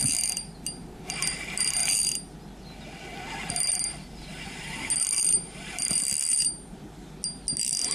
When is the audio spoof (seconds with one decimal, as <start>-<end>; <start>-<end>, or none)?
none